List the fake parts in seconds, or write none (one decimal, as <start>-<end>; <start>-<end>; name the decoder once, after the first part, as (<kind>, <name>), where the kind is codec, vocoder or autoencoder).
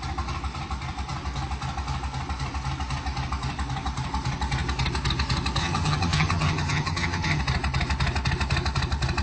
5.6-7.4 (vocoder, HiFi-GAN)